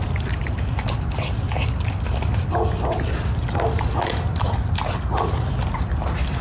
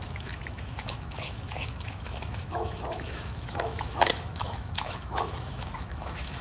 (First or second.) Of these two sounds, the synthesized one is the second